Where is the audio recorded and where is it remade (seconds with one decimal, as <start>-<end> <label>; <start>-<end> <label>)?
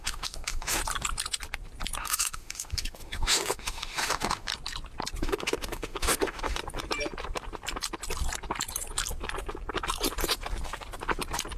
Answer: 0.0-0.8 remade; 0.8-2.0 recorded; 2.0-4.5 remade; 4.5-5.2 recorded; 5.2-6.6 remade; 6.6-11.6 recorded